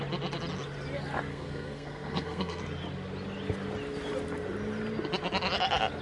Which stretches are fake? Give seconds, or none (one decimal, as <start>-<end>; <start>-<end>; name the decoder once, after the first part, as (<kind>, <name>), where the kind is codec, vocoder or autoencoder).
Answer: 1.3-2.6 (codec, SNAC)